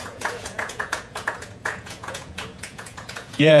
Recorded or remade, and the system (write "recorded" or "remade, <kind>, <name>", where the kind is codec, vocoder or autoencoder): remade, vocoder, Vocos